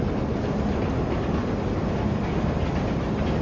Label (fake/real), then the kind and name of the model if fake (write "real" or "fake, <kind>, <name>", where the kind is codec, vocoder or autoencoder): real